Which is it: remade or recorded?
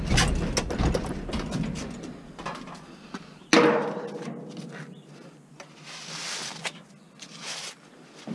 recorded